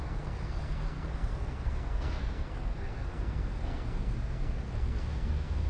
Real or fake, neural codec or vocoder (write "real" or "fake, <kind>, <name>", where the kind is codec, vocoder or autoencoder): fake, codec, SNAC